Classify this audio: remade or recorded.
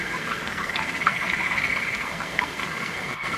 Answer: remade